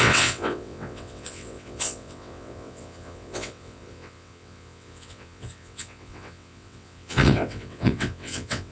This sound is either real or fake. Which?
fake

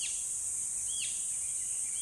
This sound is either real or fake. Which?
fake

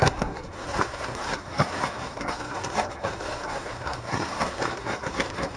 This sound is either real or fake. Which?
fake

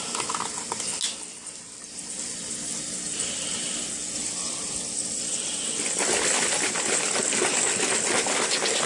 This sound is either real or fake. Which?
real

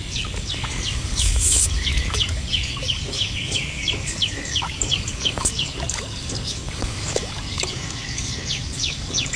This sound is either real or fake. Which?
fake